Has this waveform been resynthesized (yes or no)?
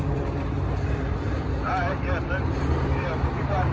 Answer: yes